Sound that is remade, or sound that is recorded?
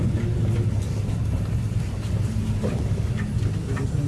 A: recorded